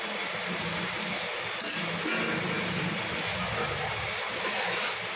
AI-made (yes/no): no